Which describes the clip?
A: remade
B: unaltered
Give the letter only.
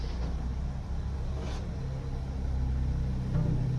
B